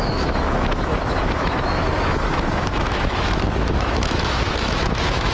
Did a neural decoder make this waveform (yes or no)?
yes